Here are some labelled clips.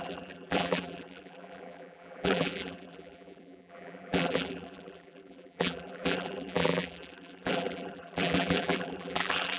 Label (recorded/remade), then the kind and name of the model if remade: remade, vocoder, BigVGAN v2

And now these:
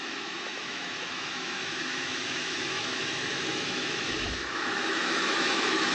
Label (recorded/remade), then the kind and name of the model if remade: remade, autoencoder, DAC-VAE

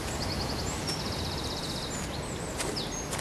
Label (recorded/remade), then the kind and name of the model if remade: recorded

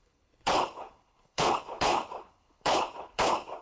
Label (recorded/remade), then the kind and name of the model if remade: remade, codec, HILCodec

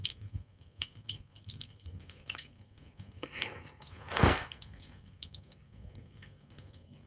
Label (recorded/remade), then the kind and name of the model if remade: remade, codec, SNAC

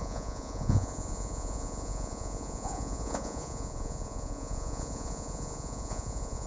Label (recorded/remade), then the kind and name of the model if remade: remade, vocoder, Vocos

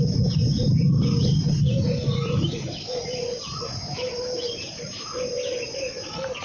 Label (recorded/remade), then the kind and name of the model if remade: recorded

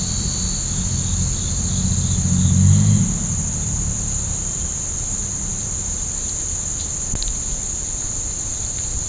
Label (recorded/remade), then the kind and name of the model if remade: recorded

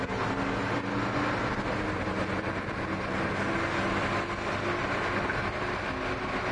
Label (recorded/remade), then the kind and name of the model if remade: recorded